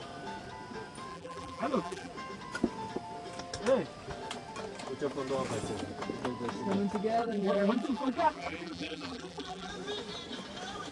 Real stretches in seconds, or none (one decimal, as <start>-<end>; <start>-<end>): 0.0-1.1; 2.1-7.2; 9.7-10.9